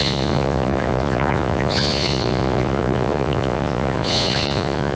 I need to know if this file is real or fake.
fake